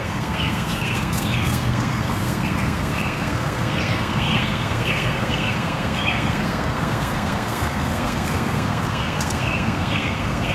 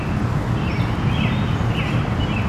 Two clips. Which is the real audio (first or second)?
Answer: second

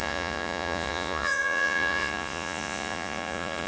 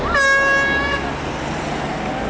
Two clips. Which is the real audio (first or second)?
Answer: second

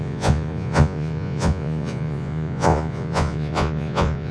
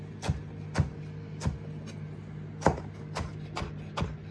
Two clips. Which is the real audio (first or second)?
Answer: second